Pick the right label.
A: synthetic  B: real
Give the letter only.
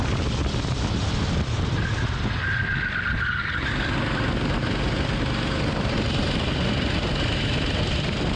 B